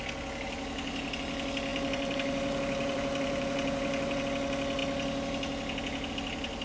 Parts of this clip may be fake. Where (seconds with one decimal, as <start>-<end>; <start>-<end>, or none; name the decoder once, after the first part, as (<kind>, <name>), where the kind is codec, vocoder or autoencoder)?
1.7-4.2 (vocoder, BigVGAN v2)